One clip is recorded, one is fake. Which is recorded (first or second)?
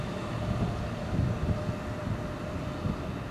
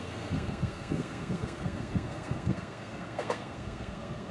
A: first